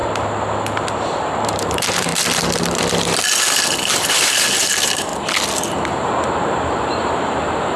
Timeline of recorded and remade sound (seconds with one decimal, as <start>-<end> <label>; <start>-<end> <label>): 0.0-0.9 recorded; 0.9-2.1 remade; 2.1-4.0 recorded; 4.0-5.1 remade; 5.1-5.7 recorded; 5.7-7.8 remade